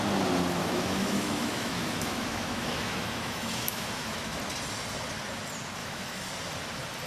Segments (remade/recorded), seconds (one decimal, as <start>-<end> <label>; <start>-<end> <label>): 0.0-0.6 recorded; 0.6-4.4 remade; 4.4-5.8 recorded; 5.8-6.3 remade; 6.3-7.1 recorded

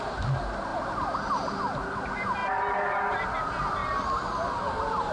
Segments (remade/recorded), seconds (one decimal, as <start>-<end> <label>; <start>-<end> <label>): 0.0-5.1 recorded

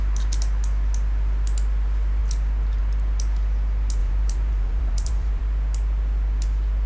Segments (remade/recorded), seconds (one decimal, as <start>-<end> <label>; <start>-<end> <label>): 0.0-4.0 recorded; 4.0-5.4 remade; 5.4-6.9 recorded